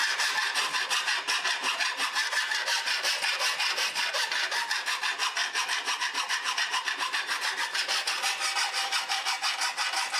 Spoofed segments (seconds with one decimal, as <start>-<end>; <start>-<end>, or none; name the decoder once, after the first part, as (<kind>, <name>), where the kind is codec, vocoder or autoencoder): 0.0-5.0 (vocoder, BigVGAN v2); 5.4-9.3